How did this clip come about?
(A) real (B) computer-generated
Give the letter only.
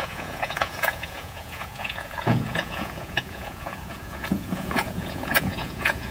B